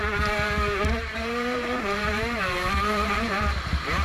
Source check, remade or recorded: remade